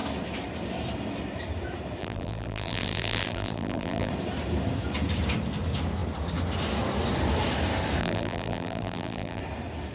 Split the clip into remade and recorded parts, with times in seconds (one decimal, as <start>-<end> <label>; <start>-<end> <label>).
0.0-2.0 recorded; 2.0-4.1 remade; 4.1-8.0 recorded; 8.0-9.4 remade; 9.4-9.9 recorded